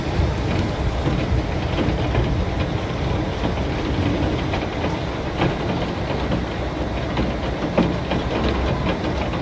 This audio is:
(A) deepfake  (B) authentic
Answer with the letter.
B